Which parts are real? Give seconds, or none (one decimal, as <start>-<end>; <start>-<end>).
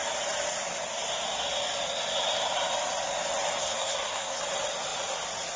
0.0-3.6; 4.4-5.6